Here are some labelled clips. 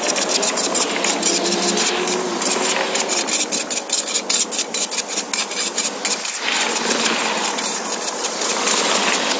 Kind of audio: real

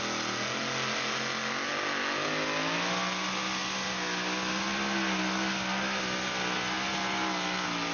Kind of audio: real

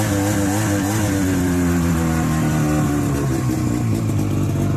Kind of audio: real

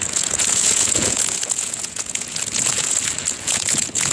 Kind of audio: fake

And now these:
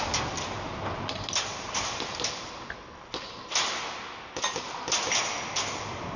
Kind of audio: real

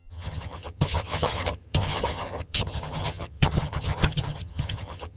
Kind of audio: fake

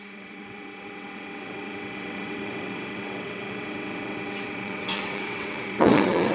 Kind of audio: fake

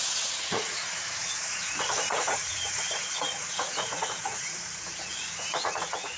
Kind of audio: fake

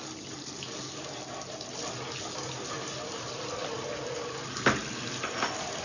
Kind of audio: real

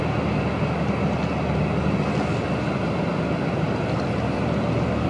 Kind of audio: real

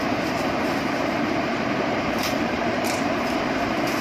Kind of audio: fake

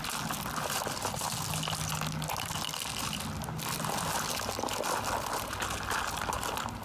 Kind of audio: real